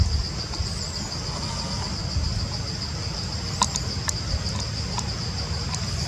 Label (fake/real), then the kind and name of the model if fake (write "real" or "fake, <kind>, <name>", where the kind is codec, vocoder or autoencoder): real